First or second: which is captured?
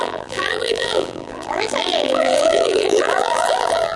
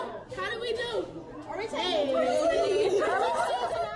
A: second